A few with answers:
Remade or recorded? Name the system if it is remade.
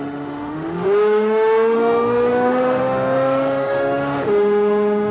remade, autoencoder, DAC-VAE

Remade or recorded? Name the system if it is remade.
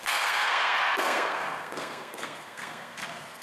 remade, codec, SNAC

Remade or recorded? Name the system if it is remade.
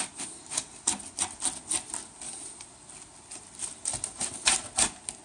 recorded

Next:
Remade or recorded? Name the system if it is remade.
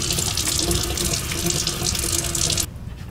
recorded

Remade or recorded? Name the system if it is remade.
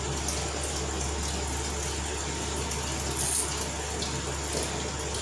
recorded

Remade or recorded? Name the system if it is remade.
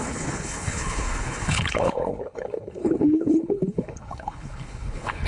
remade, codec, HILCodec